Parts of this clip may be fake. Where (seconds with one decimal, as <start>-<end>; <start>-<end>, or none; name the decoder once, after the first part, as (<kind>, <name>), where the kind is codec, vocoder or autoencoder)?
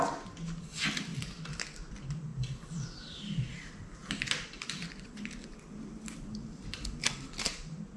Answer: none